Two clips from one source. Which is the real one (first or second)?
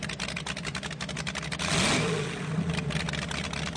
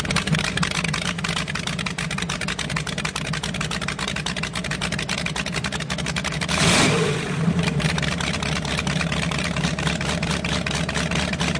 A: first